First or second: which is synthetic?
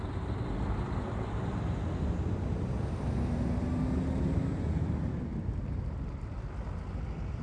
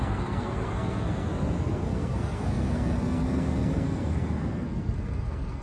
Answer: second